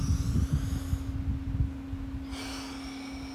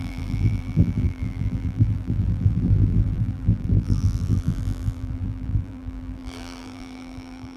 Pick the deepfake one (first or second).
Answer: second